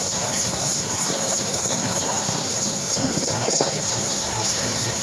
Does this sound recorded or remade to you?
remade